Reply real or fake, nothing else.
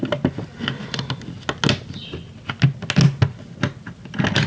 real